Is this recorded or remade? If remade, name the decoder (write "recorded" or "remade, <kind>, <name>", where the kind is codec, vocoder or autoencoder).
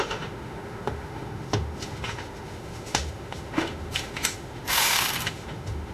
remade, autoencoder, DAC-VAE